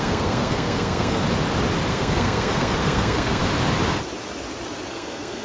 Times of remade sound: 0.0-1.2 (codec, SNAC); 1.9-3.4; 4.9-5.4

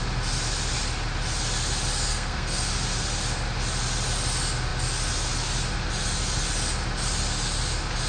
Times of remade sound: 2.1-2.7 (codec, SNAC)

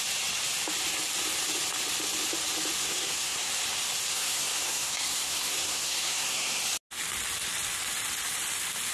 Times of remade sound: 2.8-3.5 (codec, SNAC); 4.1-6.6